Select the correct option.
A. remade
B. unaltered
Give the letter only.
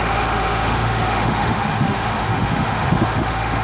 A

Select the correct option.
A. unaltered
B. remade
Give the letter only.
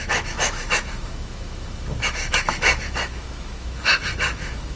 B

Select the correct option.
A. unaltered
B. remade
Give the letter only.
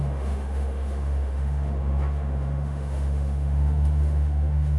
B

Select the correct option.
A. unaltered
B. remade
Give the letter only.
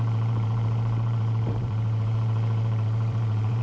B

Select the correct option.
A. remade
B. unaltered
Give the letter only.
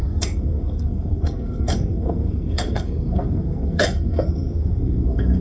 A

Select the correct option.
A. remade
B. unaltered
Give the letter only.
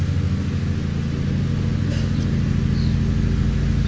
B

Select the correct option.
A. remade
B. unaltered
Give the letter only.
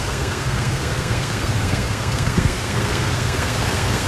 A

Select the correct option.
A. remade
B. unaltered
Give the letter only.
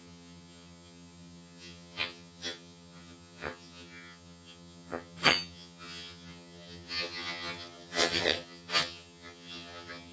A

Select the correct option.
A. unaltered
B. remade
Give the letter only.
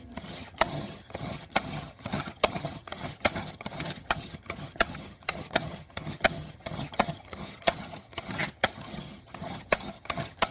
B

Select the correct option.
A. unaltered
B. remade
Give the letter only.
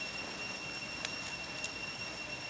A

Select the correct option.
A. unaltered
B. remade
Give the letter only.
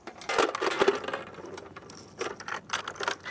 A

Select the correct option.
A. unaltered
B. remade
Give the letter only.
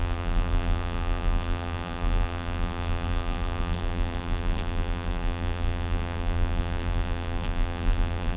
B